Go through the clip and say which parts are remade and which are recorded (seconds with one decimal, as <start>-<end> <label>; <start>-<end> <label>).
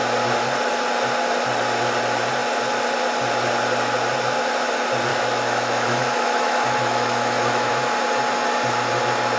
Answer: 0.0-5.1 recorded; 5.1-7.7 remade; 7.7-9.4 recorded